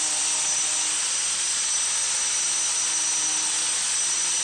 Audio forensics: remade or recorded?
recorded